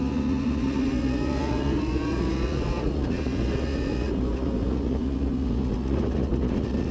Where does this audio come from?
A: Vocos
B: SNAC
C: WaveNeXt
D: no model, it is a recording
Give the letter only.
A